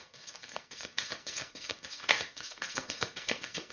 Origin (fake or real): fake